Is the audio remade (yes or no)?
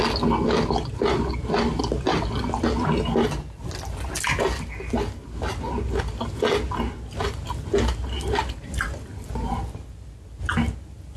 no